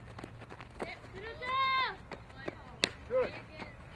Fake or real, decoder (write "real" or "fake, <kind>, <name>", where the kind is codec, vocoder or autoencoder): real